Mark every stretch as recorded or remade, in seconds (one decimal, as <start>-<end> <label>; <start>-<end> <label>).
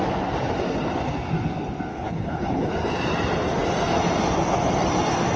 0.0-1.9 recorded; 1.9-2.7 remade; 2.7-5.4 recorded